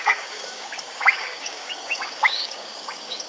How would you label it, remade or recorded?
remade